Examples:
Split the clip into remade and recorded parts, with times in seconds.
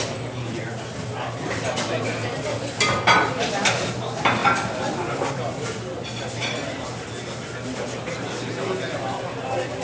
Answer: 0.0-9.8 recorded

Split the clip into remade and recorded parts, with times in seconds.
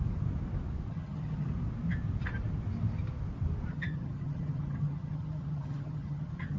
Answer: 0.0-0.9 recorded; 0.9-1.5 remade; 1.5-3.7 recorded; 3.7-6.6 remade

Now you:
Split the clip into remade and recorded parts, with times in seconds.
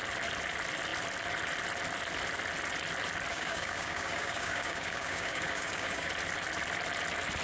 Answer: 0.0-3.3 recorded; 3.3-6.1 remade; 6.1-7.4 recorded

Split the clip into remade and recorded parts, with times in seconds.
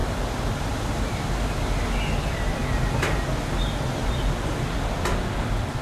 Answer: 0.0-2.6 remade; 2.6-4.1 recorded; 4.1-5.8 remade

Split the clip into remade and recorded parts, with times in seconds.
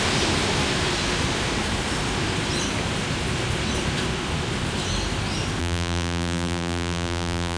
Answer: 0.0-5.6 recorded; 5.6-7.6 remade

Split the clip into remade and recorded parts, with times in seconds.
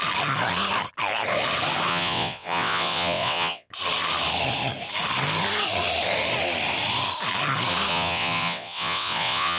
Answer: 0.0-1.9 recorded; 1.9-3.7 remade; 3.7-7.9 recorded; 7.9-9.6 remade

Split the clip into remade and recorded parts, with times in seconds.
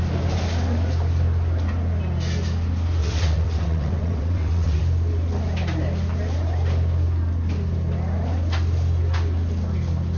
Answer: 0.0-3.0 recorded; 3.0-4.8 remade; 4.8-10.2 recorded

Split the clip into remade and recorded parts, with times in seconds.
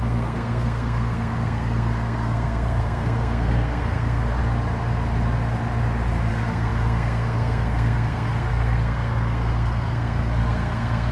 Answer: 0.0-4.4 remade; 4.4-6.3 recorded; 6.3-11.1 remade